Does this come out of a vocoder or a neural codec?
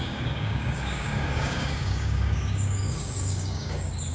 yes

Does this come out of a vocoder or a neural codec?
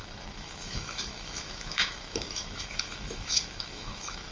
yes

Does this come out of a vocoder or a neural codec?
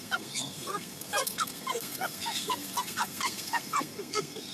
yes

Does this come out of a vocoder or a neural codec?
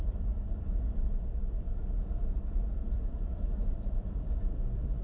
yes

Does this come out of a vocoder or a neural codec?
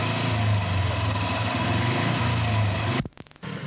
no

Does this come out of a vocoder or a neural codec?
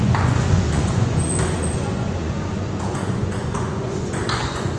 yes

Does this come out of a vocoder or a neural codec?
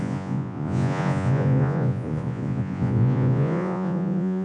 yes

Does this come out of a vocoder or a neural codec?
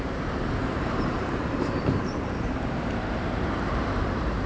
yes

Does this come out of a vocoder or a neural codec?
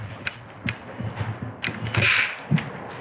no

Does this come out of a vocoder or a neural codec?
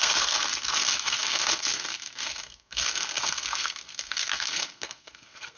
yes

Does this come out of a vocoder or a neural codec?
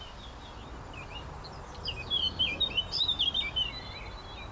no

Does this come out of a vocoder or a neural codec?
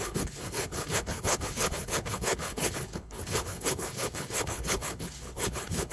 yes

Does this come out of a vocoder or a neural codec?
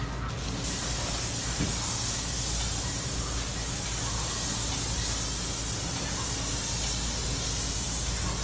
no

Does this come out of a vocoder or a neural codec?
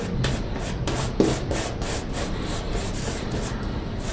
no